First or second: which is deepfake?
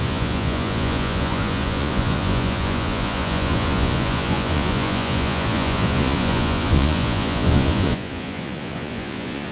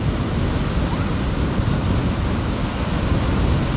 first